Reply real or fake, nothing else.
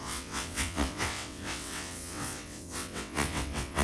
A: fake